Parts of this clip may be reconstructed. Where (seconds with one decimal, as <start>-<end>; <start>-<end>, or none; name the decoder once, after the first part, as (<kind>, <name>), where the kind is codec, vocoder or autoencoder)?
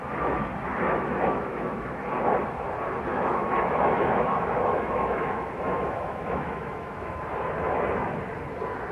0.7-2.0 (autoencoder, DAC-VAE); 3.1-7.2